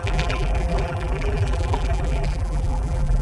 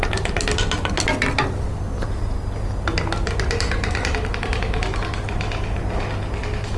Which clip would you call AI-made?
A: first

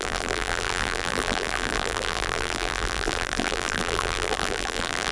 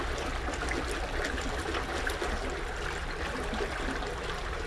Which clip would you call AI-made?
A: first